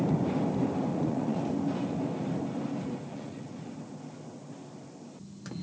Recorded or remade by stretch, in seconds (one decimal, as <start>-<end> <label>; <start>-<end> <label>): 0.0-0.9 recorded; 0.9-1.4 remade; 1.4-3.1 recorded; 3.1-3.7 remade; 3.7-5.6 recorded